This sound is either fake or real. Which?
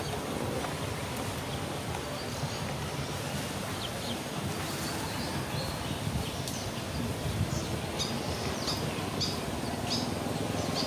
real